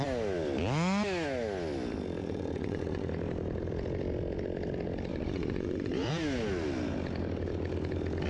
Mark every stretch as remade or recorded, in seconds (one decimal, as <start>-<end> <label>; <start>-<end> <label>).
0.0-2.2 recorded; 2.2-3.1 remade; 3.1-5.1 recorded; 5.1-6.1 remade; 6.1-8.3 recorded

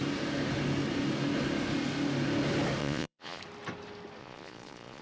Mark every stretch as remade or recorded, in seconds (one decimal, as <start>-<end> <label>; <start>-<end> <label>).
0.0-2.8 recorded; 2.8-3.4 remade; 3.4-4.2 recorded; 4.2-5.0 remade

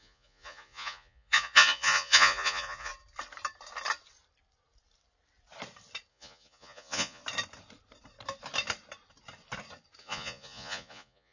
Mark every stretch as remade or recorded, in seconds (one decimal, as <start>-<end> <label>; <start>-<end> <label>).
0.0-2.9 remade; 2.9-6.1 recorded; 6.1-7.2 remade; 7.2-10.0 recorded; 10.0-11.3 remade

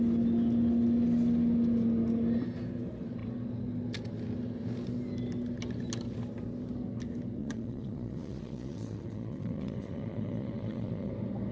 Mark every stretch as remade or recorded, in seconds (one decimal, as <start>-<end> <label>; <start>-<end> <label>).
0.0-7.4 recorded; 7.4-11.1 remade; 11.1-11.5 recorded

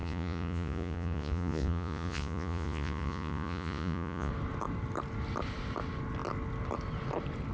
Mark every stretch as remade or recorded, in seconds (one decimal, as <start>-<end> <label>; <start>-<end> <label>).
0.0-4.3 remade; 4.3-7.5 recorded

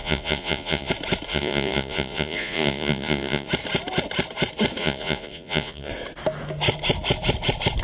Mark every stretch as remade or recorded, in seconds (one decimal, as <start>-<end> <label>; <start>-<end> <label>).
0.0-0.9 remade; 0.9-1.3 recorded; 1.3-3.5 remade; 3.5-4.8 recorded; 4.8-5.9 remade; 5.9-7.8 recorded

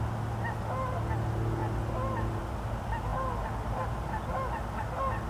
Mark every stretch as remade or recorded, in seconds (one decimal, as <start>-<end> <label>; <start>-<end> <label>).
0.0-5.3 recorded

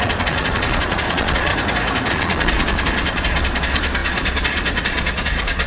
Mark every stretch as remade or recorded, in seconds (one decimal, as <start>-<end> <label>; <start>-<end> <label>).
0.0-1.5 remade; 1.5-2.1 recorded; 2.1-5.7 remade